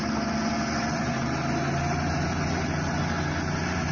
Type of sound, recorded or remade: recorded